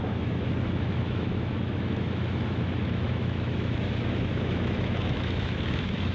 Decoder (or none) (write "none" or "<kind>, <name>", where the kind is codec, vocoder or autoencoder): autoencoder, DAC-VAE